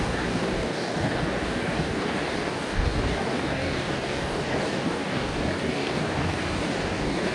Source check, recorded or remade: remade